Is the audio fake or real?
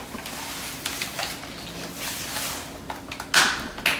real